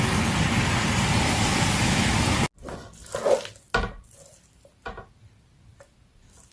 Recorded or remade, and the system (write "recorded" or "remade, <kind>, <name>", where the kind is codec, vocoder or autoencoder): recorded